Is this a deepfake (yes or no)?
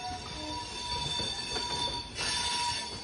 no